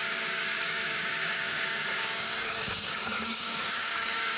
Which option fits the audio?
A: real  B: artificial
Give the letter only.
B